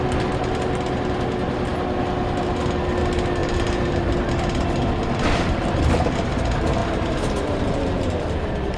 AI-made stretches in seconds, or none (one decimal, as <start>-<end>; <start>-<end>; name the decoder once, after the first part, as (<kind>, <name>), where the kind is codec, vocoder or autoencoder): 3.4-4.3 (vocoder, BigVGAN v2); 6.8-8.8